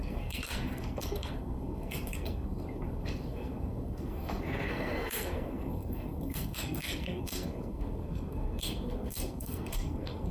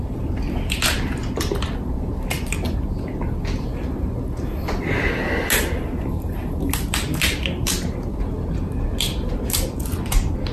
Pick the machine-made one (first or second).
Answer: first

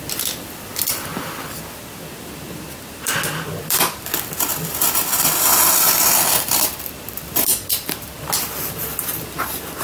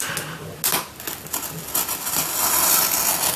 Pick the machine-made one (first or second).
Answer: first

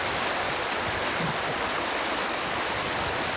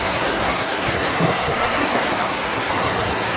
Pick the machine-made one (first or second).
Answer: second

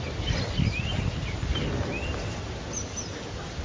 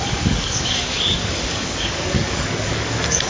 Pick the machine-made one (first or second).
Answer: second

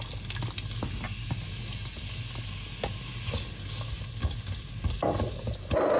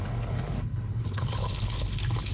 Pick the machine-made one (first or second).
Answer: second